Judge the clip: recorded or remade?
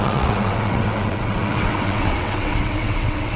remade